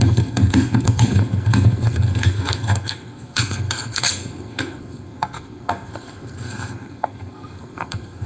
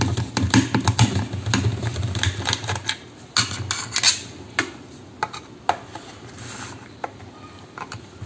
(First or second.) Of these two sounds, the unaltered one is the second